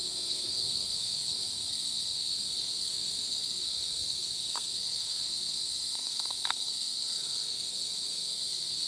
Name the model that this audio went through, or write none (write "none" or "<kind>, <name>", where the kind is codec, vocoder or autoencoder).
codec, SNAC